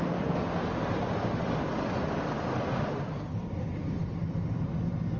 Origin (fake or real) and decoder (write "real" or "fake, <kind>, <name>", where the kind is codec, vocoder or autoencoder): real